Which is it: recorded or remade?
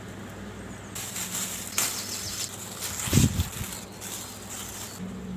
recorded